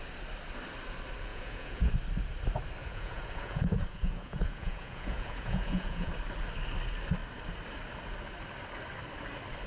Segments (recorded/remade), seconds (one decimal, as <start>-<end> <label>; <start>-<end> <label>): 0.0-1.3 recorded; 1.3-1.9 remade; 1.9-2.8 recorded; 2.8-6.1 remade; 6.1-9.7 recorded